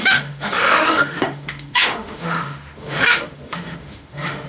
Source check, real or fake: fake